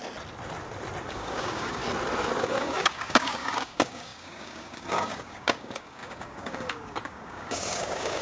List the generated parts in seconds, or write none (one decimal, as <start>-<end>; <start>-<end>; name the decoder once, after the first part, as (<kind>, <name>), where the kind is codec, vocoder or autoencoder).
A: 1.1-1.8 (codec, DAC); 2.4-8.2